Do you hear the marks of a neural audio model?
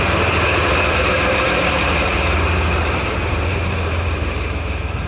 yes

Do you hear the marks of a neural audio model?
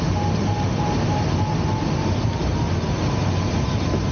no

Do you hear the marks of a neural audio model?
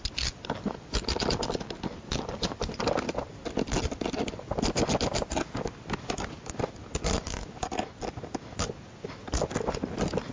no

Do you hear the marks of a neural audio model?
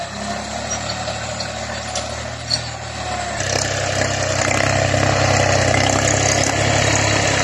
no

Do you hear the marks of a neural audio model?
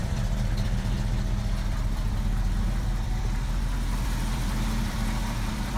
yes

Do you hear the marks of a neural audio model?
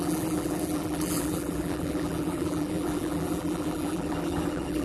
yes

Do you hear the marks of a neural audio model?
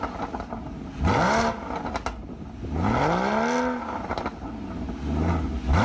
no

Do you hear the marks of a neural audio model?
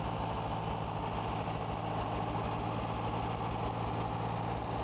no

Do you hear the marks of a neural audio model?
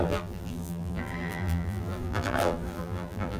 yes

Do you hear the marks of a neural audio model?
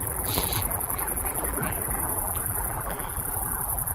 yes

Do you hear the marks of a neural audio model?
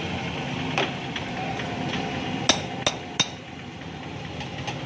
no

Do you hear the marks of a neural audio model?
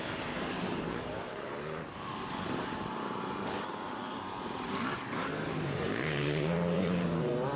yes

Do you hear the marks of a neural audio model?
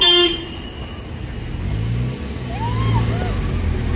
no